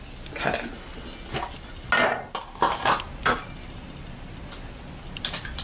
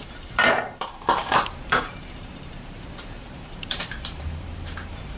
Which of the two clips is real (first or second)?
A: first